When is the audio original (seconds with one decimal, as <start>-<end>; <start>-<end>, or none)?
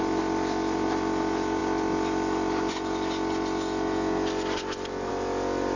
0.0-5.8